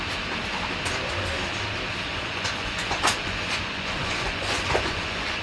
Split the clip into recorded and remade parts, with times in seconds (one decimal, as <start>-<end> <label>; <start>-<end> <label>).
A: 0.0-2.1 recorded; 2.1-5.4 remade